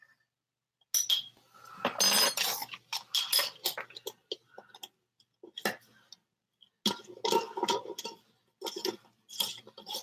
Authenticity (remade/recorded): recorded